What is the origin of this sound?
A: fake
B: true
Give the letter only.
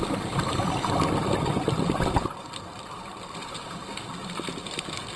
B